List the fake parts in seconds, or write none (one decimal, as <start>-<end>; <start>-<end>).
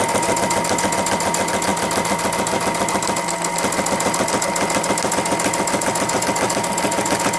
none